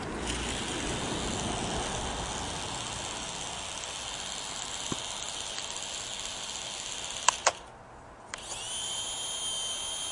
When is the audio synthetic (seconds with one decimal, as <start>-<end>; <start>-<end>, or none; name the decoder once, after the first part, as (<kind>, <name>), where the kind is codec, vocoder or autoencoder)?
none